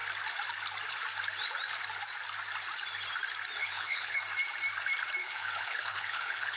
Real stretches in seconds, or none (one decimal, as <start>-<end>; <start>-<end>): 0.0-3.6; 4.2-5.2